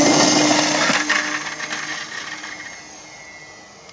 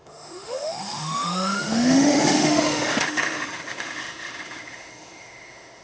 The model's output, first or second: second